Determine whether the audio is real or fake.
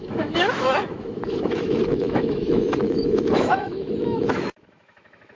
fake